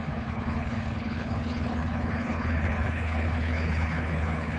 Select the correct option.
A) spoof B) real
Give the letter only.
A